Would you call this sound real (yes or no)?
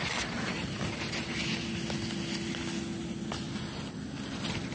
yes